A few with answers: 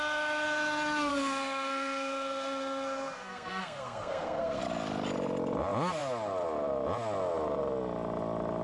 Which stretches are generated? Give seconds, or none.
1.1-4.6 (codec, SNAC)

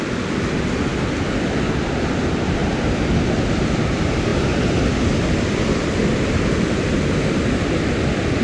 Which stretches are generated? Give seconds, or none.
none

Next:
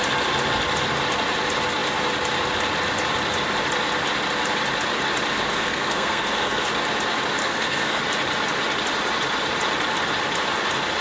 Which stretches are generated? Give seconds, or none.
5.5-6.7 (codec, SNAC); 7.4-8.0

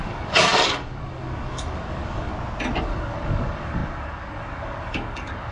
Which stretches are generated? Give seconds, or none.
0.0-2.3 (codec, DAC); 2.8-5.5

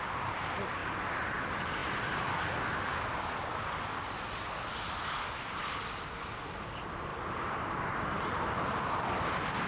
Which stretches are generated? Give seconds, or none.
0.8-1.4 (vocoder, BigVGAN v2); 7.1-8.4

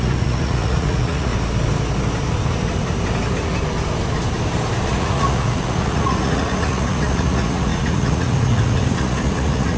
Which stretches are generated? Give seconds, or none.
0.0-1.3 (vocoder, Vocos); 4.9-9.8

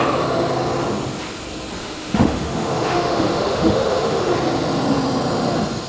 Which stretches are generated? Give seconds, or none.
1.8-4.3 (autoencoder, DAC-VAE)